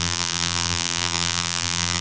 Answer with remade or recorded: remade